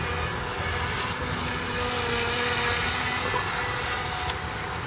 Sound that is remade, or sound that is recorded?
recorded